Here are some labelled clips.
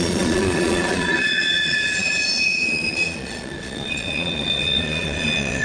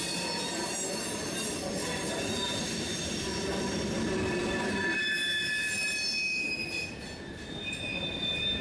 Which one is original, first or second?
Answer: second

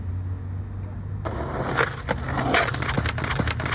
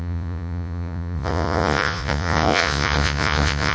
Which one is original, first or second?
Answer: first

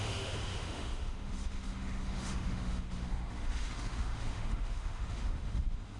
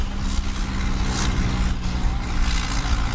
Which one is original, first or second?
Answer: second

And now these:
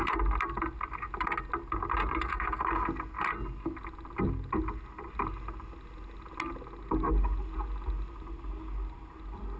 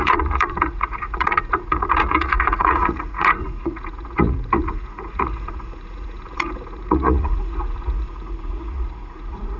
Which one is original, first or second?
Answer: first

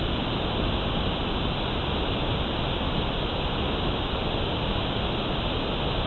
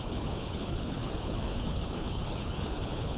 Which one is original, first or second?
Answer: first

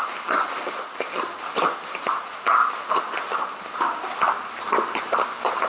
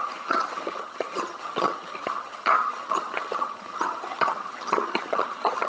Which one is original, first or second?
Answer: first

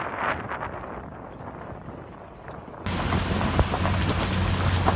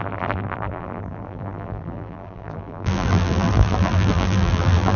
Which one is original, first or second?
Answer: first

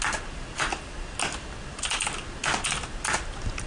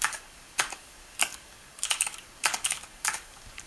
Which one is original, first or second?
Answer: first